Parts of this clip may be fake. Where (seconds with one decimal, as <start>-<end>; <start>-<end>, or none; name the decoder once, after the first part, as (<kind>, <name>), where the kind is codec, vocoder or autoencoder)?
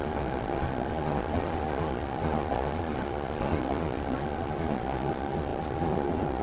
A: 0.0-6.4 (vocoder, Vocos)